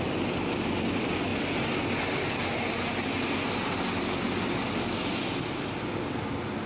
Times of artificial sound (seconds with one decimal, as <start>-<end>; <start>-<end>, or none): none